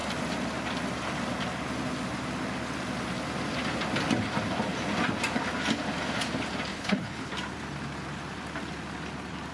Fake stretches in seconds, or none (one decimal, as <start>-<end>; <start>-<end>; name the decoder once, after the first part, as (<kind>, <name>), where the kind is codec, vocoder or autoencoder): 6.7-7.3 (codec, HILCodec)